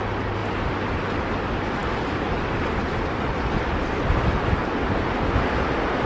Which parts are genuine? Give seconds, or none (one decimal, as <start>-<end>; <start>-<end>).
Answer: 0.0-6.1